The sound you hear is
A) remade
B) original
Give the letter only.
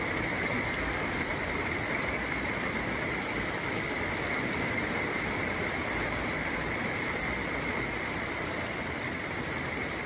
A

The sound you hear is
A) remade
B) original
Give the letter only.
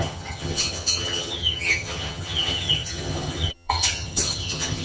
A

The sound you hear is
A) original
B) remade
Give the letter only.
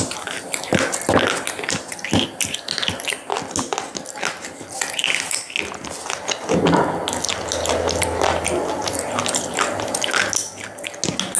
A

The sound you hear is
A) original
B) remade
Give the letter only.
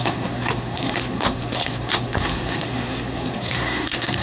B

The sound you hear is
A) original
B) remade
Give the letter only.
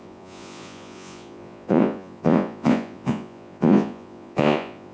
B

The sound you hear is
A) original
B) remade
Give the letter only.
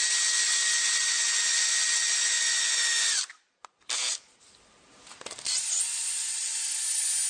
A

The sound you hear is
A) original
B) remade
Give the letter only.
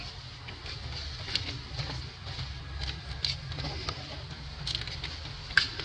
A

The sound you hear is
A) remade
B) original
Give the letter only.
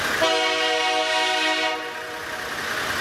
B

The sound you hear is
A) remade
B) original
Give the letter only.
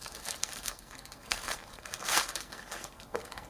A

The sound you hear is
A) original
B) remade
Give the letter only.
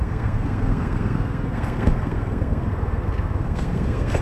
B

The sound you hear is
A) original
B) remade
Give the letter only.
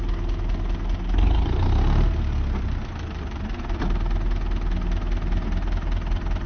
A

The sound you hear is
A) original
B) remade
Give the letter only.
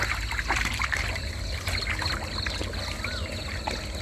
A